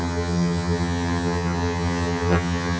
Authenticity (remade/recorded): remade